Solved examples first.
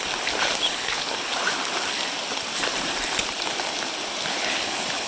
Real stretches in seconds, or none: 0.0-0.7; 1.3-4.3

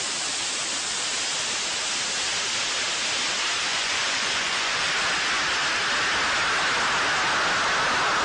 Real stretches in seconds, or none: 0.0-3.7; 4.9-8.2